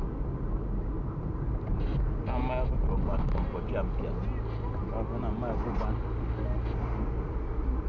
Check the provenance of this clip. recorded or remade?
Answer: recorded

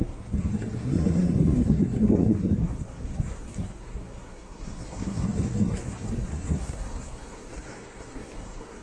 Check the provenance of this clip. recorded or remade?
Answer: remade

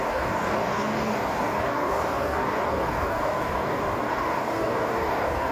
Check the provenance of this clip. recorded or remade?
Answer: remade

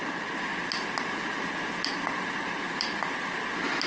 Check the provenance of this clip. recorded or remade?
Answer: recorded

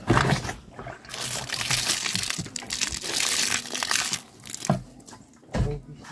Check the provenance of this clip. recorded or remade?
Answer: recorded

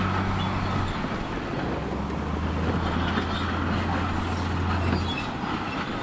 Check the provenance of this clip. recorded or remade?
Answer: recorded